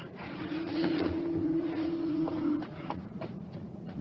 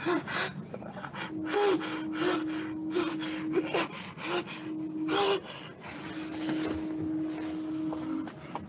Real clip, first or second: second